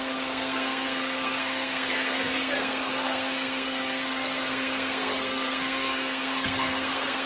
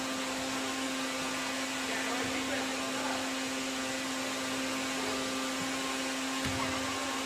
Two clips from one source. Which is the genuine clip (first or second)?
second